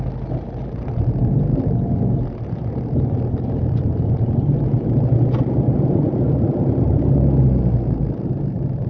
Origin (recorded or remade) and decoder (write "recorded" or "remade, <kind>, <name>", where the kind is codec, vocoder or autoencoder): recorded